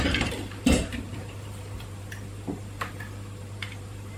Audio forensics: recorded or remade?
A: remade